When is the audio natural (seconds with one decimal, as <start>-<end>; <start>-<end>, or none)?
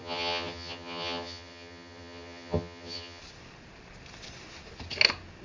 3.2-5.4